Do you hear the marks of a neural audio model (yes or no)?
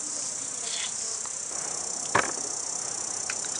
no